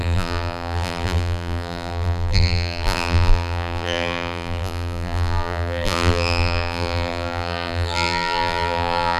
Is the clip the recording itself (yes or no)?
no